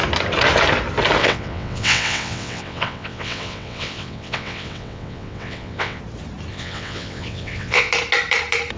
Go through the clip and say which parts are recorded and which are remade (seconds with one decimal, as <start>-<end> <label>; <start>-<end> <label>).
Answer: 0.0-1.2 recorded; 1.2-6.0 remade; 6.0-6.5 recorded; 6.5-7.9 remade; 7.9-8.8 recorded